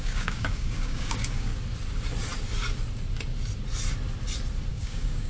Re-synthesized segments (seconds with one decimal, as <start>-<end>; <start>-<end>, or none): 0.0-1.5; 4.7-5.3

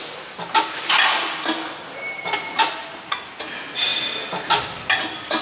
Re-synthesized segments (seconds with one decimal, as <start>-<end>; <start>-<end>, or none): none

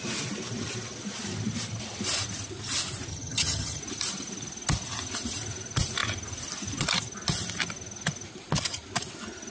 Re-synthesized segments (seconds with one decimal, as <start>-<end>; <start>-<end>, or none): 3.1-3.8

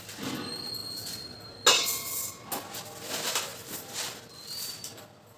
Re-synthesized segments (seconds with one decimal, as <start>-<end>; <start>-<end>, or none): none

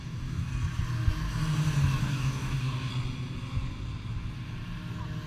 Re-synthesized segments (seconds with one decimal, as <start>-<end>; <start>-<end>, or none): 0.0-0.5; 2.0-2.9

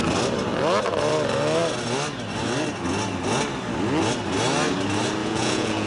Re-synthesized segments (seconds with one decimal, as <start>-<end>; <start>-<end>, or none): 5.2-5.9